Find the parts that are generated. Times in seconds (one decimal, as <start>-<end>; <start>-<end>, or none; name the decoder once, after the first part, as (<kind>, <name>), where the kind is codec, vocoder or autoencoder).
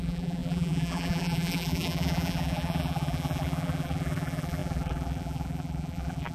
0.0-6.3 (vocoder, BigVGAN v2)